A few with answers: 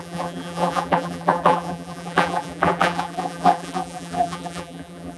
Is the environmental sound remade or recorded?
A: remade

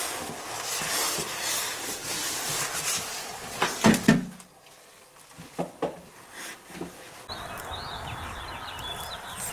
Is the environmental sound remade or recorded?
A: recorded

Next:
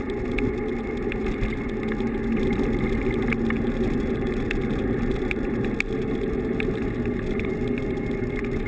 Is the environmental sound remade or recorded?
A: recorded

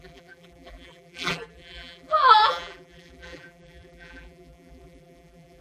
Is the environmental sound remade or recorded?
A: remade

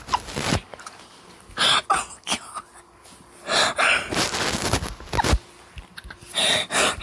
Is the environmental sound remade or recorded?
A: recorded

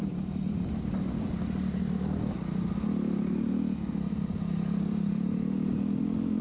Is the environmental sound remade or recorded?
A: recorded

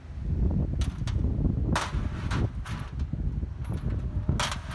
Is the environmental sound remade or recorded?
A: recorded